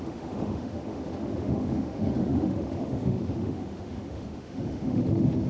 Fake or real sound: fake